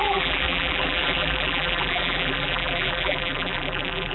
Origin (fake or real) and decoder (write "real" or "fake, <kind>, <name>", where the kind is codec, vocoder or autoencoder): fake, vocoder, BigVGAN v2